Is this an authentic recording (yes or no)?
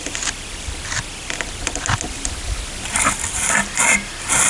yes